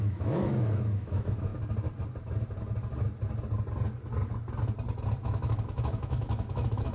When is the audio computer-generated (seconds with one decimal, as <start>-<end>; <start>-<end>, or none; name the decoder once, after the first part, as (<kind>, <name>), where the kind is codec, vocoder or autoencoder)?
0.0-1.5 (autoencoder, DAC-VAE); 5.2-6.9